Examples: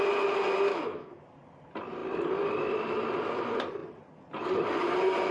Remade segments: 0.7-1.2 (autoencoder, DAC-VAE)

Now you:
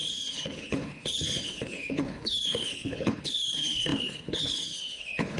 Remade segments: 0.0-5.4 (codec, HILCodec)

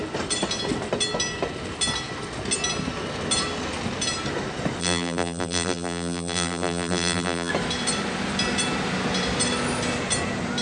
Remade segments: 4.8-7.5 (vocoder, BigVGAN v2)

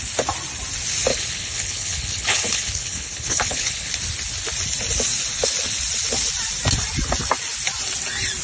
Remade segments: 1.1-3.9 (codec, HILCodec)

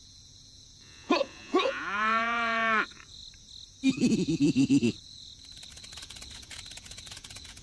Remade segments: 0.0-3.2 (vocoder, Vocos); 3.9-7.6

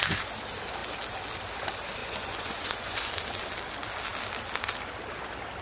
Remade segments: 2.0-3.1 (vocoder, Vocos)

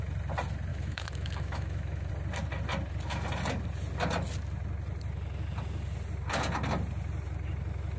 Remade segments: 0.7-2.1 (autoencoder, DAC-VAE)

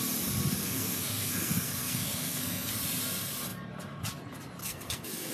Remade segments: 0.6-2.7 (codec, SNAC); 4.6-5.3